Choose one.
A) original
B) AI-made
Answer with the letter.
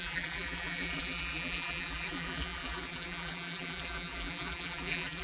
B